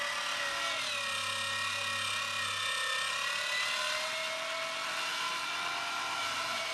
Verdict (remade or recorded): recorded